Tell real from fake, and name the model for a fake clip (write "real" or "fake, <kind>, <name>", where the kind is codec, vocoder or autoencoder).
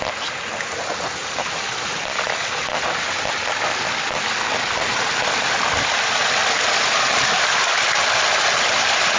real